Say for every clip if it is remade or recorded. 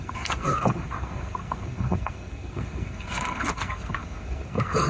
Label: remade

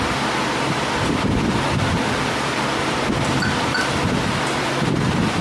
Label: recorded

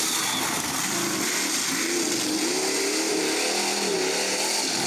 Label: recorded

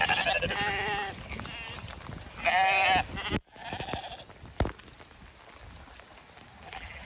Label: recorded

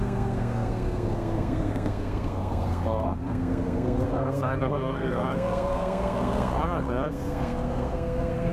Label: remade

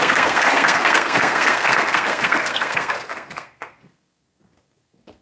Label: remade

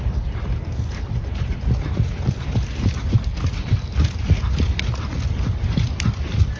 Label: recorded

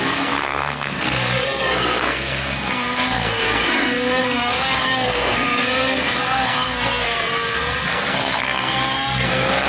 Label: remade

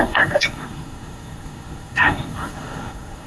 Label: remade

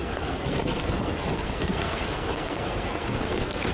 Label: remade